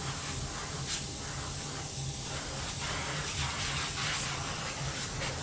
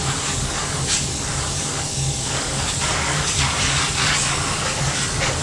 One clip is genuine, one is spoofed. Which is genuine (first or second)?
first